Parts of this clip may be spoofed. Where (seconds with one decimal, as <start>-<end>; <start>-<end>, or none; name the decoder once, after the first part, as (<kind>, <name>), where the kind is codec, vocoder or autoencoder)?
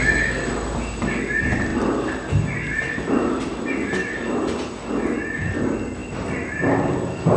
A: none